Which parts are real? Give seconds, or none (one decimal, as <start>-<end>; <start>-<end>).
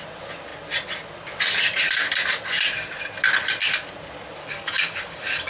0.0-4.4